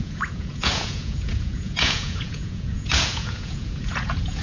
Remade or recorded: remade